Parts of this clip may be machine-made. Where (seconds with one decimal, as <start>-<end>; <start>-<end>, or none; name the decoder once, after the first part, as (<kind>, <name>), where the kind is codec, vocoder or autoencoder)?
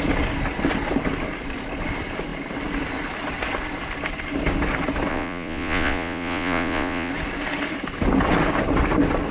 5.1-7.1 (vocoder, Vocos)